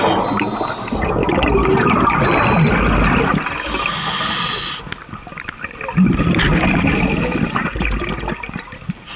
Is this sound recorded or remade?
recorded